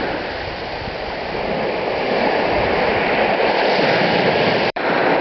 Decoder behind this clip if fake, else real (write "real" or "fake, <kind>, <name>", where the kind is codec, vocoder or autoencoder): fake, vocoder, BigVGAN v2